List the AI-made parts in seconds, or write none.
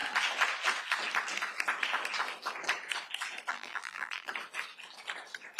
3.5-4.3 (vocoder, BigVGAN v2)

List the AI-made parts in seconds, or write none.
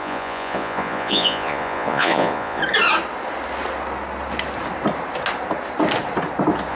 0.0-2.6 (vocoder, Vocos)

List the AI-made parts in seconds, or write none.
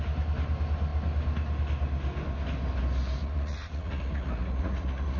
3.2-5.2 (vocoder, Vocos)